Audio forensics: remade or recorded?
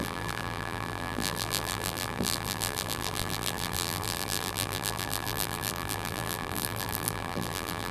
remade